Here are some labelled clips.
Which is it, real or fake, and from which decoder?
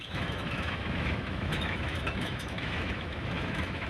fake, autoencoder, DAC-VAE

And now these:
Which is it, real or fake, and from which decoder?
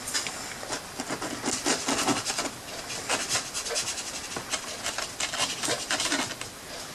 real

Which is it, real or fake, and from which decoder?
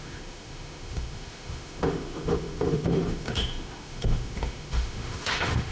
fake, autoencoder, DAC-VAE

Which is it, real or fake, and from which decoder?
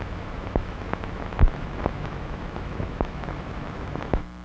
fake, autoencoder, DAC-VAE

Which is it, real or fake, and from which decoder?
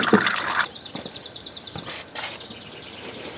real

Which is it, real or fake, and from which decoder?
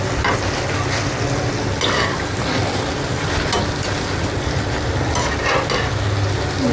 real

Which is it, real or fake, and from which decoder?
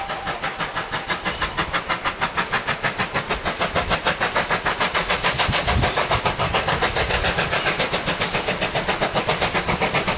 real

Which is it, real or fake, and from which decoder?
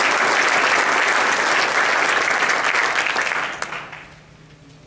real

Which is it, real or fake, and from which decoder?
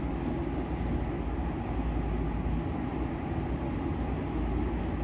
real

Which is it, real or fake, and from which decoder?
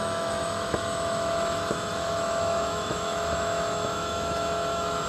fake, autoencoder, DAC-VAE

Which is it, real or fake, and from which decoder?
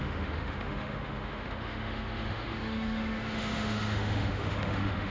fake, autoencoder, DAC-VAE